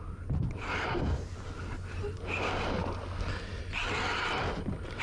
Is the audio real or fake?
real